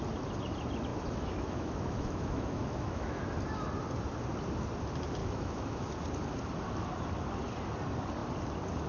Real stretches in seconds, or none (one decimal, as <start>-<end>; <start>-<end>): 0.0-0.9; 3.2-5.2; 5.9-8.9